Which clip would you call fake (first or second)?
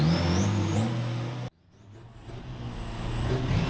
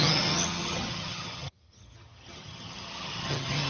second